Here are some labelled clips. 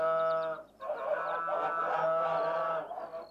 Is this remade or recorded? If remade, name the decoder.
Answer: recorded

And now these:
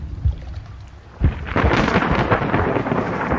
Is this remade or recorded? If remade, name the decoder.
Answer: recorded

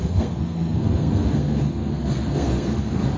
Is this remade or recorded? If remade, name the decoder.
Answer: remade, codec, SNAC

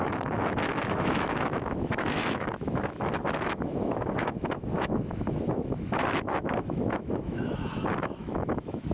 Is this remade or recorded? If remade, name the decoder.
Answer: remade, autoencoder, DAC-VAE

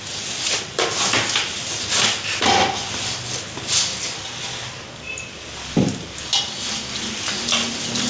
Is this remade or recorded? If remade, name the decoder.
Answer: recorded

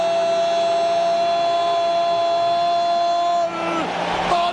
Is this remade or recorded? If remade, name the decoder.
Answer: recorded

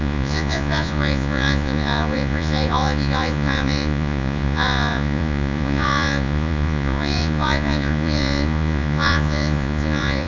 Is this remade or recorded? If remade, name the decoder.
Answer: remade, vocoder, Vocos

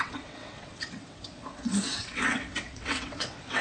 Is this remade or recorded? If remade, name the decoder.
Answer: remade, vocoder, WaveNeXt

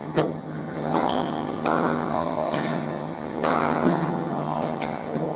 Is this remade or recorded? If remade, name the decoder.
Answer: remade, vocoder, HiFi-GAN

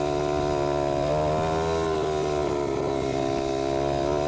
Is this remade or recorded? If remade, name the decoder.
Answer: recorded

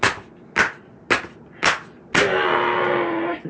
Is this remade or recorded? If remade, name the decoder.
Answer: recorded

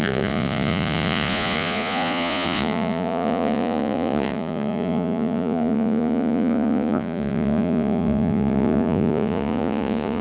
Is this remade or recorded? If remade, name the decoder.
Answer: remade, vocoder, Vocos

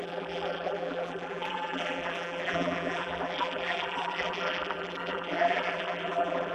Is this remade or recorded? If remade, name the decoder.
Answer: remade, vocoder, BigVGAN v2